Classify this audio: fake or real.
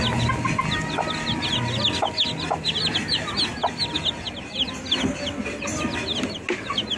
real